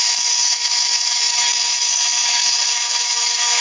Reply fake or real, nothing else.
fake